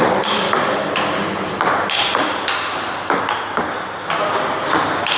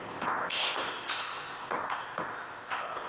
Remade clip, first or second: second